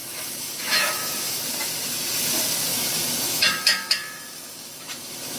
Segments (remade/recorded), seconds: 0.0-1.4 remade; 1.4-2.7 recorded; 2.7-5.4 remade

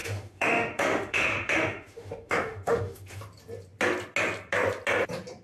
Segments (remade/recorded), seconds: 0.0-3.2 remade; 3.2-5.4 recorded

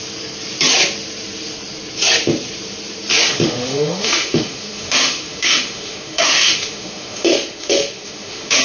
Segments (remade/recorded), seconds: 0.0-3.1 recorded; 3.1-8.6 remade

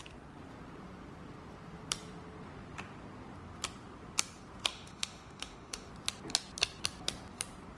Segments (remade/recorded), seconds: 0.0-4.7 recorded; 4.7-5.9 remade; 5.9-7.8 recorded

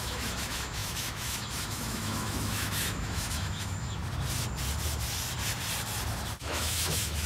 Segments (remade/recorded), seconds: 0.0-4.0 remade; 4.0-6.4 recorded; 6.4-7.3 remade